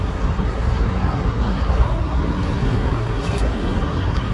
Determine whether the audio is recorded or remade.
remade